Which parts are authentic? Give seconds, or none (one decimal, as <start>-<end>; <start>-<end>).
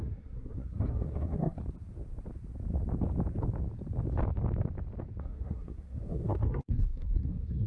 1.6-5.2